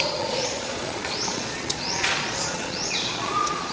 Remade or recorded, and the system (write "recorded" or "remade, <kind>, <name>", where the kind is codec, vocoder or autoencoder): remade, vocoder, Vocos